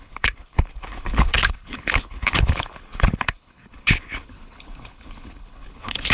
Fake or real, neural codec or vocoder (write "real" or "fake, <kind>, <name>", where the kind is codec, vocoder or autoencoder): fake, codec, HILCodec